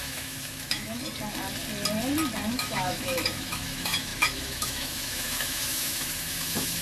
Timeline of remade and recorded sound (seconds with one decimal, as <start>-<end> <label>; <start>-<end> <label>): 0.0-1.0 remade; 1.0-2.5 recorded; 2.5-6.8 remade